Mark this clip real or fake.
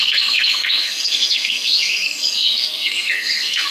fake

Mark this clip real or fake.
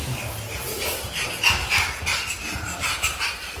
real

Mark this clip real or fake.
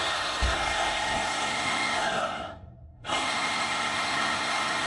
fake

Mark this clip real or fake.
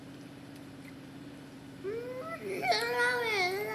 real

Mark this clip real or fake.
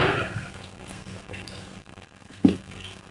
fake